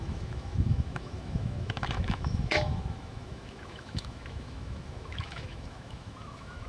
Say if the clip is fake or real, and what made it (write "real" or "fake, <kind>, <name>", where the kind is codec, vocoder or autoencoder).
fake, autoencoder, DAC-VAE